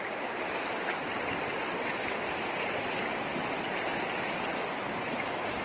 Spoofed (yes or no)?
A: no